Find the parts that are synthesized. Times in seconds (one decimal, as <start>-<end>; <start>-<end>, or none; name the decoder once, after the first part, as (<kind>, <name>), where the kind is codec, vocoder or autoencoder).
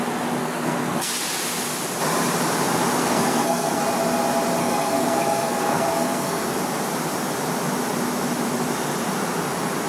0.4-1.1 (codec, SNAC); 3.0-3.8; 4.6-6.4